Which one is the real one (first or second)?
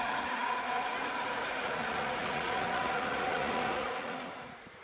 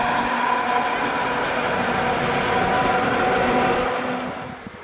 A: second